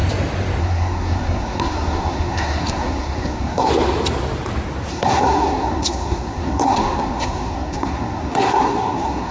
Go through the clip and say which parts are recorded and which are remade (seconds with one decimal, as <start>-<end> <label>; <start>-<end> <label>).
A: 0.0-0.6 recorded; 0.6-3.7 remade; 3.7-4.9 recorded; 4.9-9.3 remade